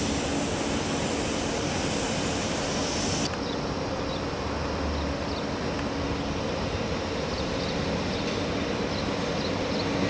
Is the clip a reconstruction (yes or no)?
no